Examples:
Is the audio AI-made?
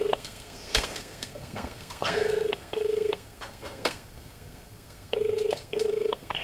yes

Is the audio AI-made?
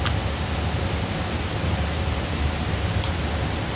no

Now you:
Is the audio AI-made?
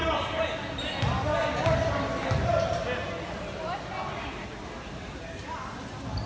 no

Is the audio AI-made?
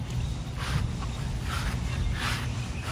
no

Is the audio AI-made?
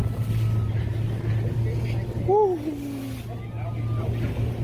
no